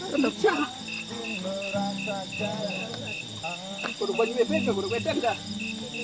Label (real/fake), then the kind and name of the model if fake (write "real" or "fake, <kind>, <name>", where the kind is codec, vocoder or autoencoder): real